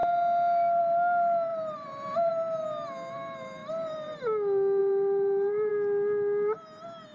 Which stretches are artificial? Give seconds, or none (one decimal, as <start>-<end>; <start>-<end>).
1.5-2.3; 4.8-5.7